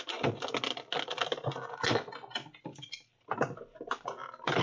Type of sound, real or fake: real